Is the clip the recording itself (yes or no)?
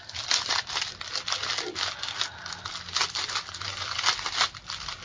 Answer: yes